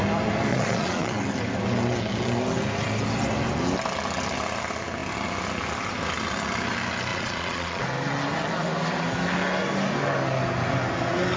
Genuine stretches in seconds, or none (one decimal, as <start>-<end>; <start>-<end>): 0.0-0.5; 1.2-7.1; 7.8-11.4